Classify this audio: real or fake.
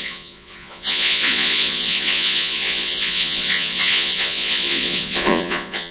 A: fake